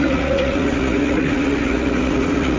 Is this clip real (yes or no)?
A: no